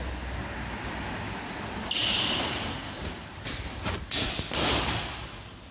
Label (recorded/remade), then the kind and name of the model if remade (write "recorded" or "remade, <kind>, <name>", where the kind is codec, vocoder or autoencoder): recorded